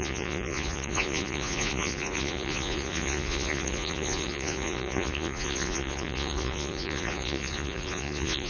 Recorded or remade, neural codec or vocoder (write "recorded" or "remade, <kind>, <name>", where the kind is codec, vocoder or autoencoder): remade, vocoder, Vocos